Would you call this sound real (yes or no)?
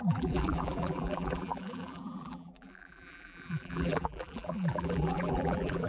no